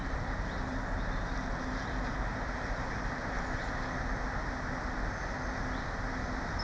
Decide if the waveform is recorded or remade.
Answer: recorded